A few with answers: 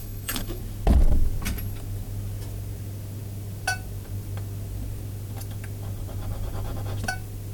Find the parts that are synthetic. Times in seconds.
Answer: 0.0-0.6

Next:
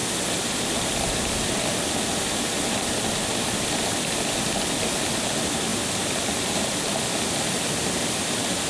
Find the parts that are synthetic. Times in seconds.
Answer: none

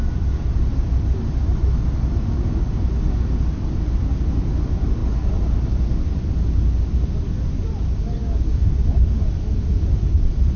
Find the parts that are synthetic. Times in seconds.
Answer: 8.2-9.3

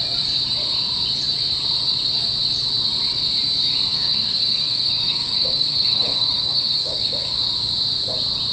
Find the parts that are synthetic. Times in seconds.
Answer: 3.9-7.4

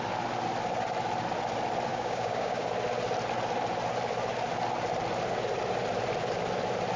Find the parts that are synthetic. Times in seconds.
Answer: 1.9-2.7